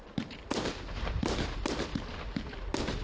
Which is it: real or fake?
real